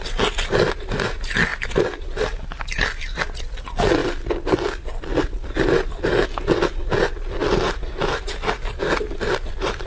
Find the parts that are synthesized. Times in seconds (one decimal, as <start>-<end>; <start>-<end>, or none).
none